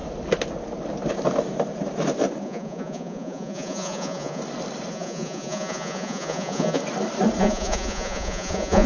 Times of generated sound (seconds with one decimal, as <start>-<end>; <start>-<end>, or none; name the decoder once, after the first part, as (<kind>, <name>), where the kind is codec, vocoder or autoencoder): 2.4-4.4 (vocoder, Vocos); 4.9-6.8; 7.4-8.9